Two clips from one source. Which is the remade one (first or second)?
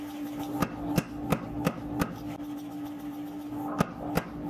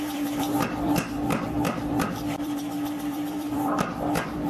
second